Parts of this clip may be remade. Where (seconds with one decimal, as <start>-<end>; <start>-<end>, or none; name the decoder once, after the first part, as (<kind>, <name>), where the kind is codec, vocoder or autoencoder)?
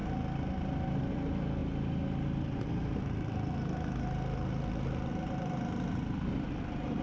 none